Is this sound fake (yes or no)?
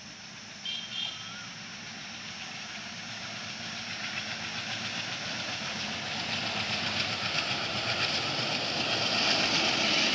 no